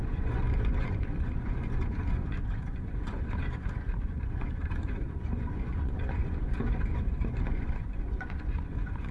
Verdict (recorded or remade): remade